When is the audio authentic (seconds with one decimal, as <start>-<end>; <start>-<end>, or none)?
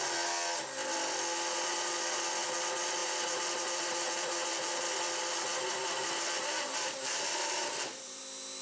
0.0-3.0; 4.7-5.5; 8.2-8.6